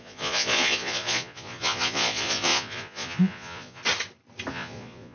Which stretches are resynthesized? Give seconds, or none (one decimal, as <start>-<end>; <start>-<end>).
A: 0.0-3.8; 4.5-5.1